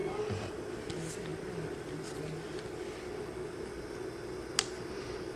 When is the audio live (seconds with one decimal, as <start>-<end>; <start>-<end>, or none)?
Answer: 0.7-5.4